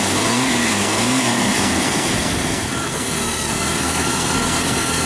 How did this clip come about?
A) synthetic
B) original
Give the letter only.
A